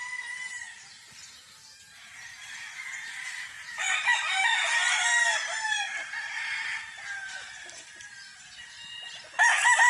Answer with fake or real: real